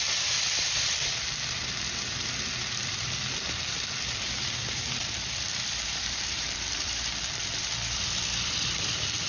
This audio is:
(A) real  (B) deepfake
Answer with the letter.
B